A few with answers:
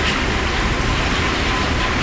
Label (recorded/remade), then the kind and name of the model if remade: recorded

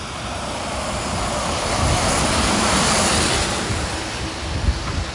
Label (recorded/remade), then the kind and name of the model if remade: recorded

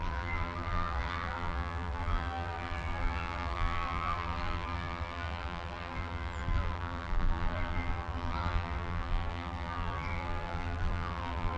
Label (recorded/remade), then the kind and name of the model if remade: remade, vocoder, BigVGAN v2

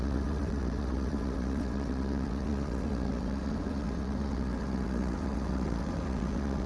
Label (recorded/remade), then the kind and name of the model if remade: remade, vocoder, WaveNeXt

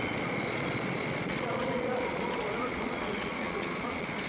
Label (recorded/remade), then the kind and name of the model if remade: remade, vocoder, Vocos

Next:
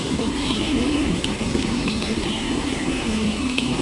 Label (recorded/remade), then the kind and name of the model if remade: remade, codec, SNAC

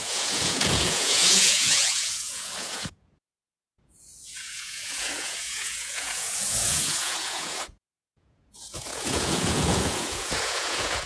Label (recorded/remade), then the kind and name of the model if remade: remade, vocoder, Vocos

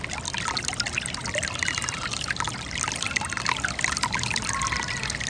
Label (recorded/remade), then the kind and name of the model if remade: recorded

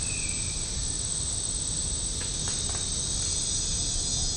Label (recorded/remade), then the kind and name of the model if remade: recorded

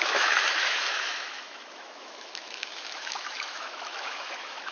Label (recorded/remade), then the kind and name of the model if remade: remade, autoencoder, DAC-VAE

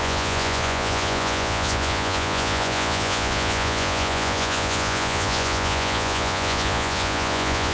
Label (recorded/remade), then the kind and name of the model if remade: remade, vocoder, Vocos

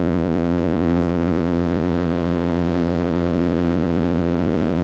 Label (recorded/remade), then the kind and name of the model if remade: remade, vocoder, Vocos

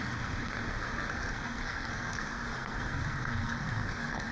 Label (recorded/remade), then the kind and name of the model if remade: remade, codec, SNAC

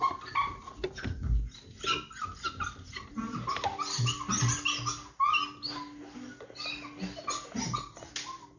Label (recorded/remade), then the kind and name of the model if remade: recorded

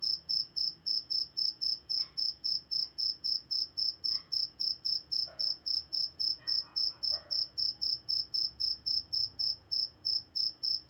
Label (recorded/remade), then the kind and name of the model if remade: remade, vocoder, Vocos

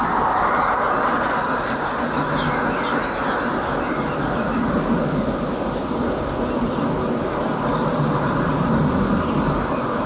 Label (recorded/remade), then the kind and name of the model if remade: recorded